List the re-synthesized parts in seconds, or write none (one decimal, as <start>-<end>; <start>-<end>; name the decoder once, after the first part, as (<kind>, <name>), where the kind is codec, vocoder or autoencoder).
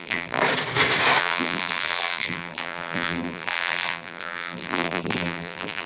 0.0-0.4 (vocoder, BigVGAN v2); 1.2-5.9